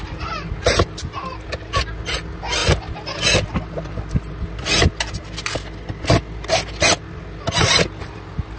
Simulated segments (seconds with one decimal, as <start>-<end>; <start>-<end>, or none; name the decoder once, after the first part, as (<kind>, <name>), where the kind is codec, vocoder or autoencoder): none